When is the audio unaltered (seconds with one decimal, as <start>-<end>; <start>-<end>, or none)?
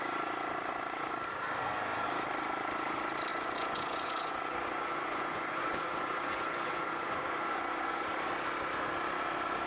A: 0.0-3.3; 8.0-9.7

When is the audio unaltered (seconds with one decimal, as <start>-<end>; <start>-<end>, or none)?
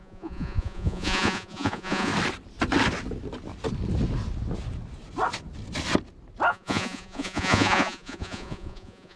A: 2.1-6.5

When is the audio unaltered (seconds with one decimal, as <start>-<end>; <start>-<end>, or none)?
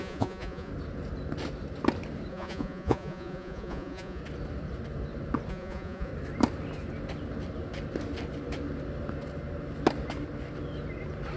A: 0.7-2.3; 4.2-5.5; 6.1-11.4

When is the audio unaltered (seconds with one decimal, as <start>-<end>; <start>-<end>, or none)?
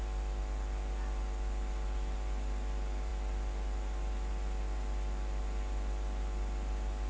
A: 0.0-7.1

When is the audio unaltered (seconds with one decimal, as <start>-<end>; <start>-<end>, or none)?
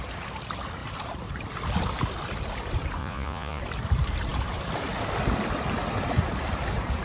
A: 0.0-3.0; 3.6-7.0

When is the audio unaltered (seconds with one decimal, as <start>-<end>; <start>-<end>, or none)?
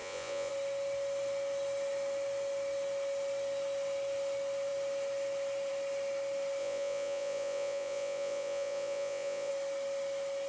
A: 0.5-6.6; 9.5-10.5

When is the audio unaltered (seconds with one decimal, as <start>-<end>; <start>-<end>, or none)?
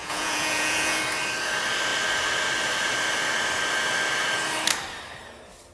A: 1.0-5.7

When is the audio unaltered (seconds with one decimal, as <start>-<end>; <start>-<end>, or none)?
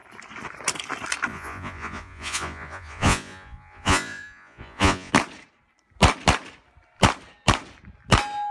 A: 0.0-1.3; 5.1-8.5